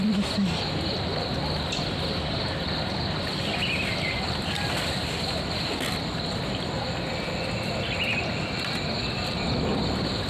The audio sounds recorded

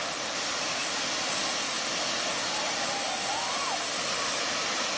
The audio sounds recorded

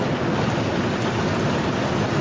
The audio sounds recorded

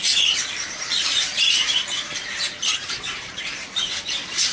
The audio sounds remade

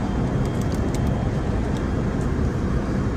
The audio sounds recorded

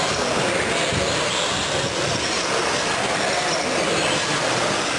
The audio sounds recorded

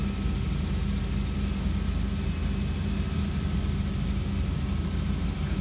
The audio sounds recorded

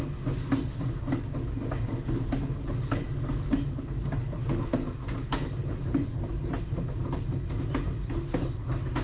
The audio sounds recorded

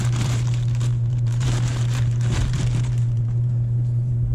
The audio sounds remade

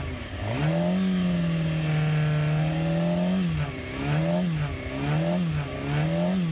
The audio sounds recorded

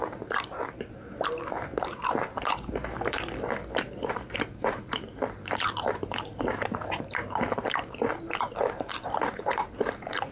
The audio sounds remade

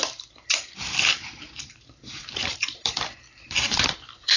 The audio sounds remade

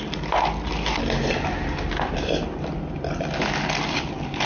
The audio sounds recorded